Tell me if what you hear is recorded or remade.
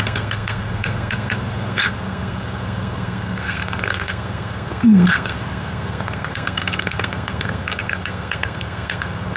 remade